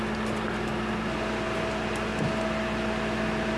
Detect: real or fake real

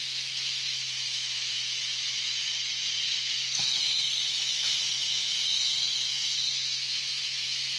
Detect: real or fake fake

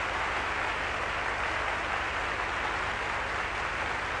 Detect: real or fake real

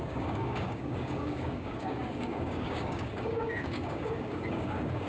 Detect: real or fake fake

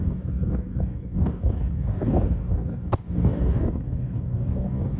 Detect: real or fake fake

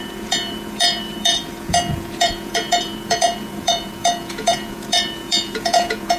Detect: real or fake fake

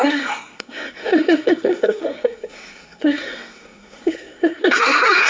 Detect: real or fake fake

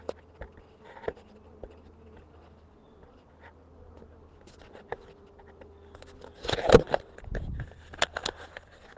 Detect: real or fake real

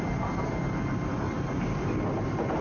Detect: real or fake real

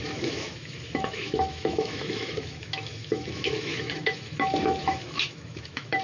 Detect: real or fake fake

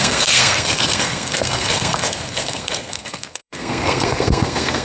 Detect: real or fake fake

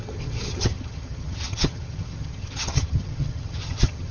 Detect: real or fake fake